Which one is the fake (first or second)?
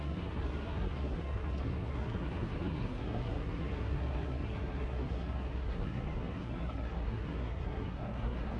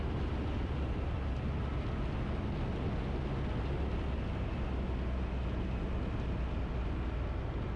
first